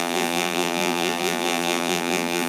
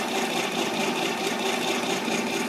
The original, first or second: second